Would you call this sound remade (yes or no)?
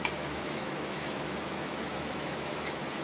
yes